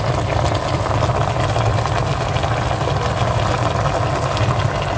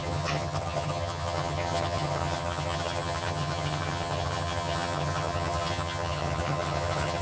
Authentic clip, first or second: first